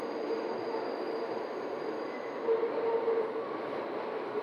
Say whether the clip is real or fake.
real